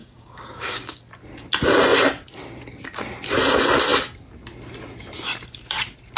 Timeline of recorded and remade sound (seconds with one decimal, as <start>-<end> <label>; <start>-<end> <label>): 0.0-1.0 remade; 1.0-6.2 recorded